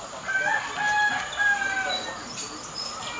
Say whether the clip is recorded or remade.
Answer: recorded